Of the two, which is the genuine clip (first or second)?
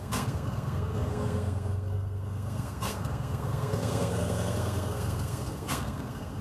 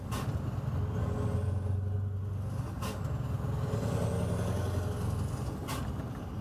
second